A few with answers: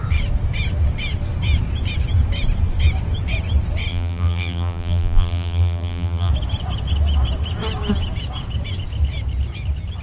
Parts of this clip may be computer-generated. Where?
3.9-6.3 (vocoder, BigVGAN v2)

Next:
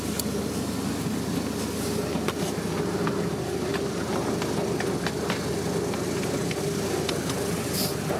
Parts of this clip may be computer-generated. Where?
none

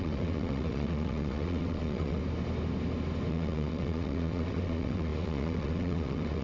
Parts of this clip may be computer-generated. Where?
0.0-2.2 (vocoder, WaveNeXt); 3.3-6.4

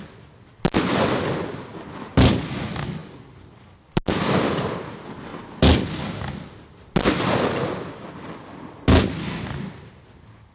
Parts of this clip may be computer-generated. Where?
none

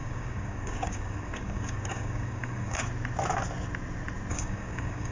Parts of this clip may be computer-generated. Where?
0.0-2.8 (codec, DAC); 4.3-5.1

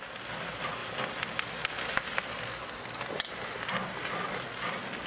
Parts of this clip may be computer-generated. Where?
none